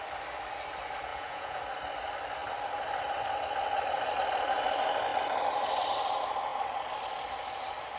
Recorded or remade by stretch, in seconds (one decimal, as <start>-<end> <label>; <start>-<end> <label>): 0.0-1.1 recorded; 1.1-1.6 remade; 1.6-8.0 recorded